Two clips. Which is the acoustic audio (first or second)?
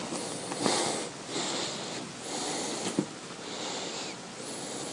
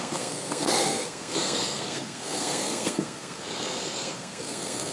first